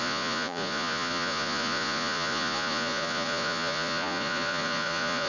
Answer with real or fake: fake